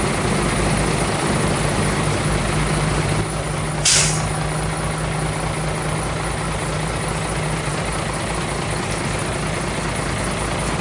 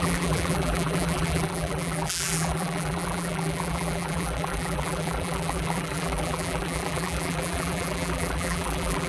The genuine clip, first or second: first